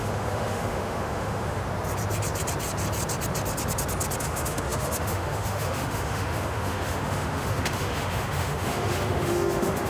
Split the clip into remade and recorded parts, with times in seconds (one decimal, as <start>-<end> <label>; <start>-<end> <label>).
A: 0.0-1.6 remade; 1.6-4.2 recorded; 4.2-9.9 remade